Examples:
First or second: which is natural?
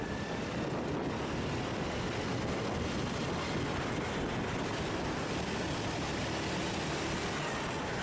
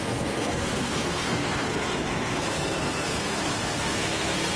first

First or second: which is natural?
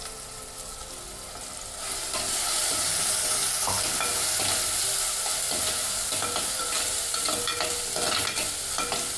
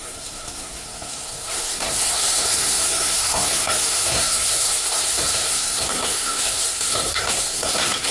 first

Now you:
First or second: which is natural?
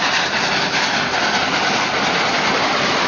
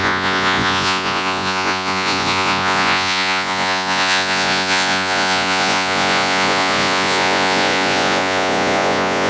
first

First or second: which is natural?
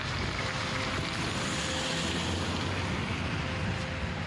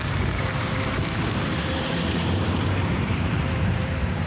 first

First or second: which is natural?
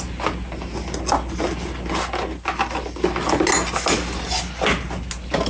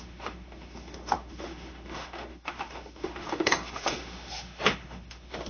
first